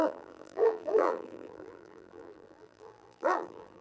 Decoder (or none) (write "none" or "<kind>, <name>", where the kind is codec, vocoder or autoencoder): vocoder, BigVGAN v2